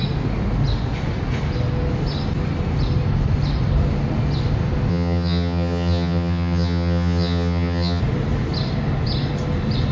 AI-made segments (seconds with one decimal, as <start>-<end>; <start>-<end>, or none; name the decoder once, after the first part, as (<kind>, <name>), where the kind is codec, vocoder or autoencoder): 4.9-8.0 (vocoder, HiFi-GAN)